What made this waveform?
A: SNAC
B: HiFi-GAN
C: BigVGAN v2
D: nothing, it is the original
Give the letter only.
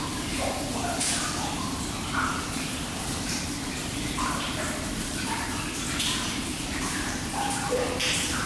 C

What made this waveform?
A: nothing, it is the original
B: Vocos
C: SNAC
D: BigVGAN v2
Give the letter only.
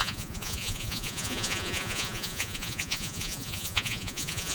B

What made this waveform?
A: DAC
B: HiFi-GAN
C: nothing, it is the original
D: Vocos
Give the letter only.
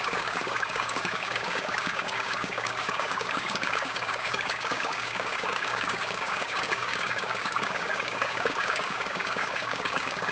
A